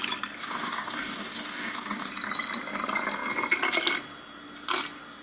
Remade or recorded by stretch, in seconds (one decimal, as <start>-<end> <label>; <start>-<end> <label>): 0.0-0.4 recorded; 0.4-2.1 remade; 2.1-5.2 recorded